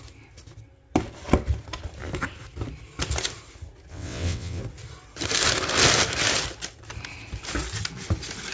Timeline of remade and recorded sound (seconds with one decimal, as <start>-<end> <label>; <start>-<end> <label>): 0.0-3.9 recorded; 3.9-4.6 remade; 4.6-8.5 recorded